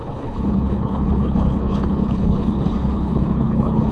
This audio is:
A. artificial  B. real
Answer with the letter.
A